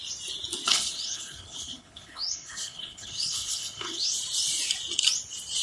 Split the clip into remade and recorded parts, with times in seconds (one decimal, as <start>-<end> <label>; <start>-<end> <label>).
0.0-0.7 recorded; 0.7-4.1 remade; 4.1-5.6 recorded

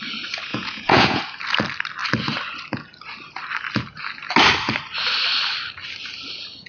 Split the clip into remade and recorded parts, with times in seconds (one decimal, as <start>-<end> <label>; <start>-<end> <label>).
0.0-0.5 recorded; 0.5-1.2 remade; 1.2-6.7 recorded

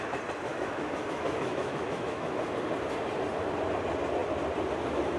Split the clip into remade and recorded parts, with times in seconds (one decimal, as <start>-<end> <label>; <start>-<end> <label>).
0.0-0.5 recorded; 0.5-2.4 remade; 2.4-5.2 recorded

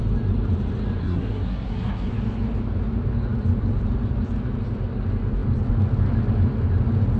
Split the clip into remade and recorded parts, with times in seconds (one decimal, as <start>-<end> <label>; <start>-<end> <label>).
0.0-1.0 recorded; 1.0-2.1 remade; 2.1-7.2 recorded

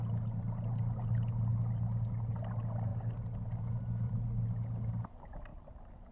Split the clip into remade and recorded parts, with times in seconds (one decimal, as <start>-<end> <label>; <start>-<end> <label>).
0.0-6.1 recorded

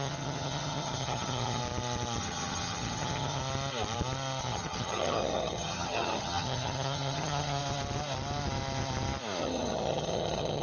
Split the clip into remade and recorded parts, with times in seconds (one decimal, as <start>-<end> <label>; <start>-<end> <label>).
0.0-1.6 remade; 1.6-2.2 recorded; 2.2-3.4 remade; 3.4-4.4 recorded; 4.4-7.6 remade; 7.6-9.4 recorded; 9.4-10.6 remade